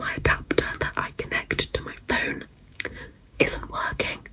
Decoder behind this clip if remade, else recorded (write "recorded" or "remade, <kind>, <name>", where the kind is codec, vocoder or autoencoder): remade, codec, DAC